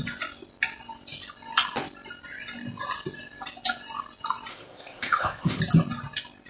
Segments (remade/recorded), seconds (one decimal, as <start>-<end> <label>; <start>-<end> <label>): 0.0-4.5 recorded; 4.5-5.6 remade; 5.6-6.5 recorded